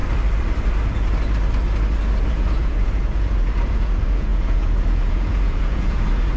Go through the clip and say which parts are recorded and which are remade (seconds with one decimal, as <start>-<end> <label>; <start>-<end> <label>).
0.0-2.2 recorded; 2.2-6.4 remade